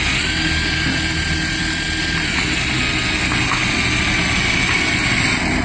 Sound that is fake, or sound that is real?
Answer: real